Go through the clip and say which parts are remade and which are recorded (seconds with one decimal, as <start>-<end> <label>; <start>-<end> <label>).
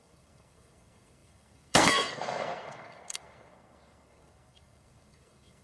0.0-5.6 remade